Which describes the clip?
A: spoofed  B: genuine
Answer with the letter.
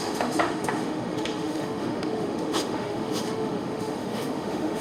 A